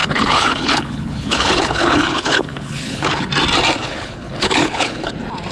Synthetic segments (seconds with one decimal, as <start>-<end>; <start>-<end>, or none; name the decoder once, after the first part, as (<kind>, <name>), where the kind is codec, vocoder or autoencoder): 0.0-3.3 (codec, HILCodec); 3.8-5.1